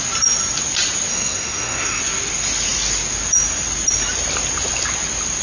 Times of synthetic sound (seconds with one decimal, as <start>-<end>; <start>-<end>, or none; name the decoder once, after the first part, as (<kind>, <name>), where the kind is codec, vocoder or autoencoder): 1.1-2.0 (codec, SNAC)